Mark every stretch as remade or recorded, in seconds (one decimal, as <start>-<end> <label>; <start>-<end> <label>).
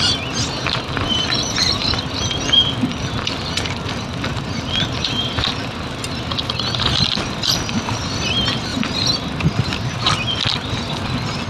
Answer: 0.0-4.3 recorded; 4.3-5.5 remade; 5.5-6.1 recorded; 6.1-6.9 remade; 6.9-8.7 recorded; 8.7-10.1 remade; 10.1-11.5 recorded